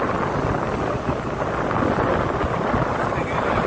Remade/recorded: recorded